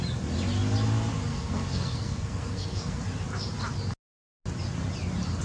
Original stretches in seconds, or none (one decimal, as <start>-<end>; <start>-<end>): 0.0-1.3; 3.0-5.4